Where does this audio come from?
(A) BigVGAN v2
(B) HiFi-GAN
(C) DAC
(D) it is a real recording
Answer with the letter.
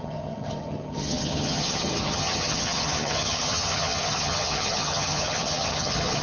B